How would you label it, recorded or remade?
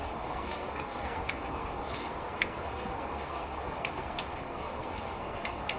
remade